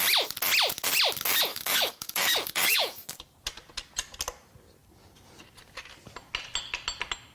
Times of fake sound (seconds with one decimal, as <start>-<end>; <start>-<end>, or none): 1.5-3.1